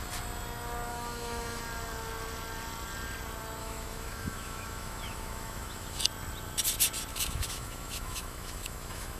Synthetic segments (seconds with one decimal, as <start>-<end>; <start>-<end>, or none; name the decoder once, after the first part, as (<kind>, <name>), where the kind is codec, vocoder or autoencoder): 0.9-1.6 (autoencoder, DAC-VAE); 3.6-6.0; 7.1-9.2